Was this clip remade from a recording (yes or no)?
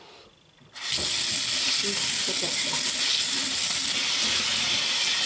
no